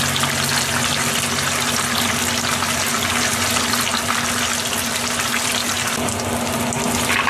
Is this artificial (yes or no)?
no